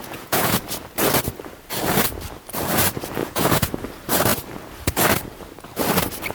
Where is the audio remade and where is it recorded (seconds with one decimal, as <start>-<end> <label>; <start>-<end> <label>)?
0.0-0.6 remade; 0.6-3.2 recorded; 3.2-3.7 remade; 3.7-6.3 recorded